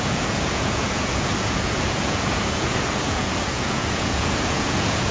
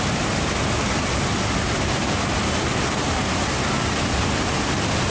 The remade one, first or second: first